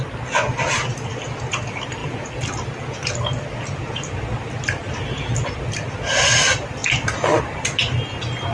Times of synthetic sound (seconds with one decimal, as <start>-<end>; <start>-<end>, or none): none